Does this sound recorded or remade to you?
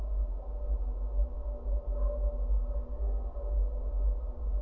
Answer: recorded